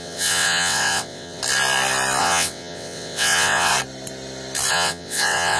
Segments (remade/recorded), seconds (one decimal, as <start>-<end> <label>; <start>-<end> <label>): 0.0-1.4 remade; 1.4-2.2 recorded; 2.2-3.7 remade; 3.7-4.7 recorded; 4.7-5.6 remade